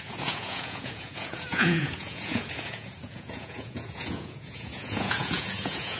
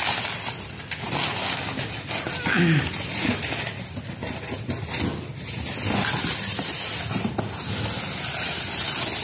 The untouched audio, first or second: second